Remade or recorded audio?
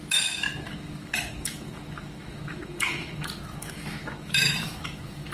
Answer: remade